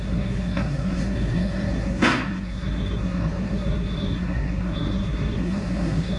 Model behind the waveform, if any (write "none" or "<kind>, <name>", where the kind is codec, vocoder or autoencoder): codec, SNAC